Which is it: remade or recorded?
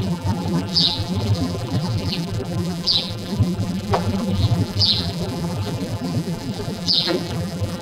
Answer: remade